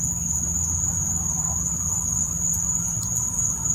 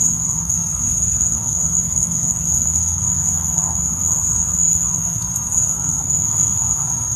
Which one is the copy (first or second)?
second